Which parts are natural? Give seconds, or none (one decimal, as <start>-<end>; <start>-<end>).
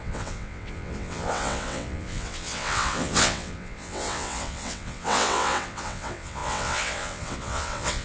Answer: none